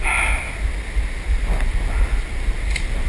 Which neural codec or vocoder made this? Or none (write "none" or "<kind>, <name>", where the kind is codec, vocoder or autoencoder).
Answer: none